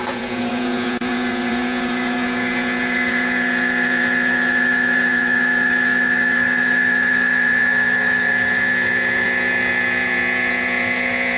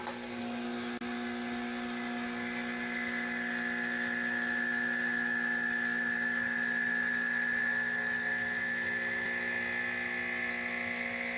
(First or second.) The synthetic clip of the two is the first